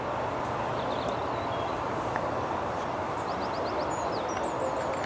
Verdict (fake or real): real